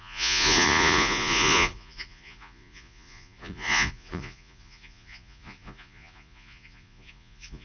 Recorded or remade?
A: remade